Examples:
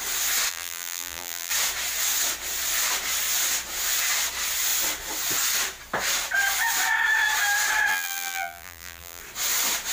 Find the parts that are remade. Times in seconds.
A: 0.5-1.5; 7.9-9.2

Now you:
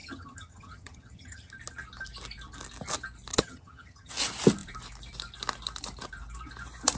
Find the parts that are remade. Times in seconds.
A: 0.0-1.5; 3.3-4.1

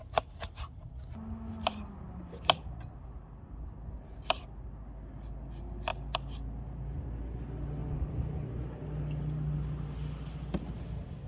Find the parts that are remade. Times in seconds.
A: none

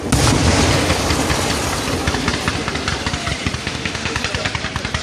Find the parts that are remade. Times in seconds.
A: 3.6-4.2

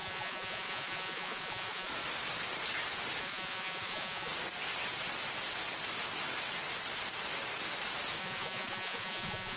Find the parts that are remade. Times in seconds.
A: 0.0-1.9; 3.2-4.3; 8.2-9.6

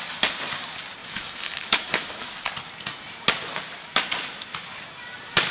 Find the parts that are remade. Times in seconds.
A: 1.0-2.5